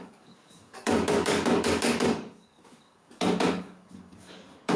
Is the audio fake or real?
fake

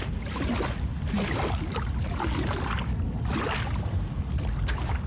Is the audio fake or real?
real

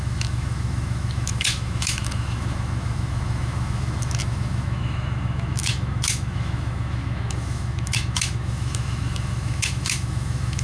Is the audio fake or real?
fake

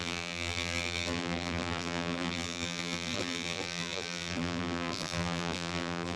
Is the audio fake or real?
fake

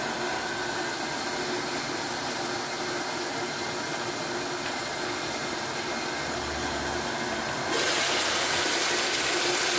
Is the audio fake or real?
real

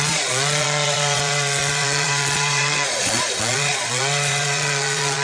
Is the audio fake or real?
fake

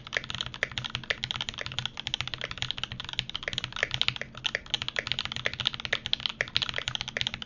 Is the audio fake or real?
real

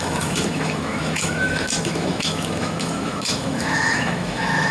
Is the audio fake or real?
fake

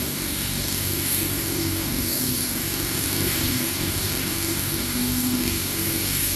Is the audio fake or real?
fake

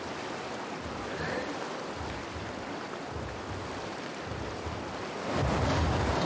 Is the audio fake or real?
fake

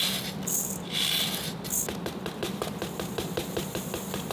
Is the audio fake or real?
real